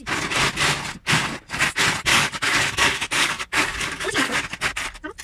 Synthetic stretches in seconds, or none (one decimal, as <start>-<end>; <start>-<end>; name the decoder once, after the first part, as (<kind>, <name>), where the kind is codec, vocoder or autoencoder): 2.1-4.4 (codec, DAC)